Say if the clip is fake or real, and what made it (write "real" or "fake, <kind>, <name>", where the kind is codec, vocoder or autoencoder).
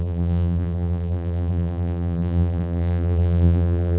fake, vocoder, BigVGAN v2